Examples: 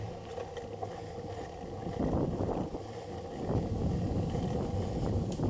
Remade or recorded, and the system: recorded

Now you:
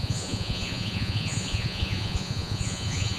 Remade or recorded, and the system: remade, vocoder, Vocos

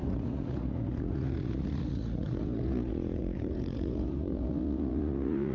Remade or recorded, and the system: remade, vocoder, Vocos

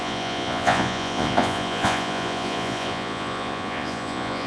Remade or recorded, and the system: remade, vocoder, Vocos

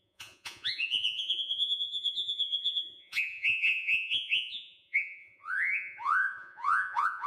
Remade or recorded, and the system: remade, vocoder, Vocos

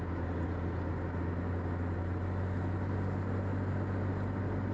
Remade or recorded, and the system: recorded